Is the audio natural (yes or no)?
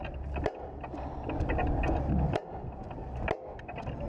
yes